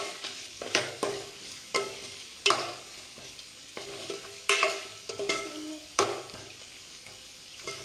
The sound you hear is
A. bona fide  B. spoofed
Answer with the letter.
B